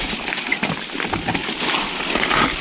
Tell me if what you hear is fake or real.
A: real